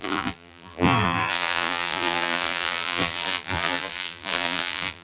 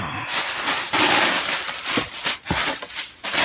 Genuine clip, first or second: second